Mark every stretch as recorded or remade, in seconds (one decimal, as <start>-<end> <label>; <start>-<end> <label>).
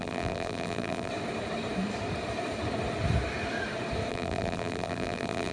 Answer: 0.0-1.1 remade; 1.1-4.1 recorded; 4.1-5.5 remade